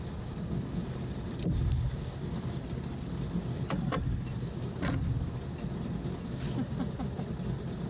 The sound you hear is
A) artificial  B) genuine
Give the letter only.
B